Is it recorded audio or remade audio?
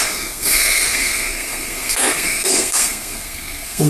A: remade